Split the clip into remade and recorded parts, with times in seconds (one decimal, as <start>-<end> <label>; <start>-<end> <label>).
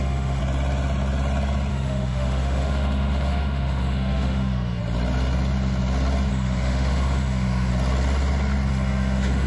0.0-0.4 remade; 0.4-1.7 recorded; 1.7-4.8 remade; 4.8-6.3 recorded; 6.3-7.7 remade; 7.7-8.7 recorded; 8.7-9.5 remade